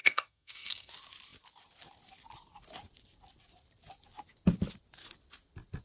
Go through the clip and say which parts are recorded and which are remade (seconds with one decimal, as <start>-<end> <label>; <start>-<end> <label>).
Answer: 0.0-0.9 remade; 0.9-5.8 recorded